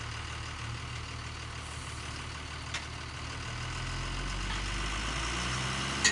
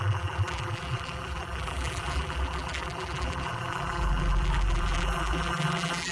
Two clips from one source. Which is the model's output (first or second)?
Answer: second